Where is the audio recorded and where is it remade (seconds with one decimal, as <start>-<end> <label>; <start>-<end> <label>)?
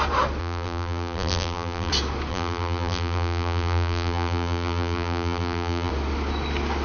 0.0-0.4 recorded; 0.4-1.9 remade; 1.9-2.3 recorded; 2.3-5.9 remade; 5.9-6.8 recorded